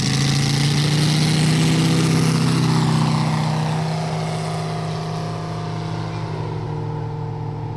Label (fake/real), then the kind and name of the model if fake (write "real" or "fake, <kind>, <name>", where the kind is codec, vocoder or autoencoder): real